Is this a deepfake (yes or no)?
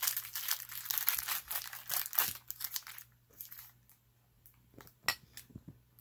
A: no